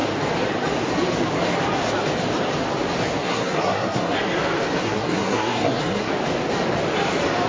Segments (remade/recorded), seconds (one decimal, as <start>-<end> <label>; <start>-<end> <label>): 0.0-3.2 recorded; 3.2-4.2 remade; 4.2-4.8 recorded; 4.8-6.1 remade; 6.1-7.5 recorded